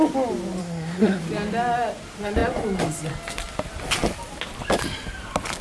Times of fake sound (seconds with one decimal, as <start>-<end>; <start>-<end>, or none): 0.6-1.2